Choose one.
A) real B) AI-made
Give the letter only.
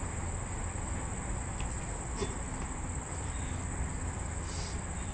A